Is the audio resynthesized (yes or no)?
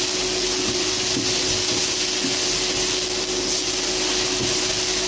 no